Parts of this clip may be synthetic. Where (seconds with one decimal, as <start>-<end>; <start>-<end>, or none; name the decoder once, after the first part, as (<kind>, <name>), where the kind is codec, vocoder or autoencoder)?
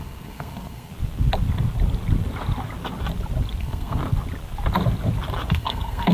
0.0-0.9 (codec, SNAC); 3.6-4.0; 5.5-6.1